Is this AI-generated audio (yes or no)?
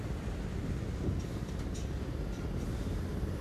no